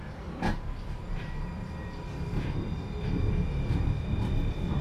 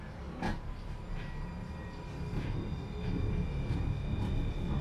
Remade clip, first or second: first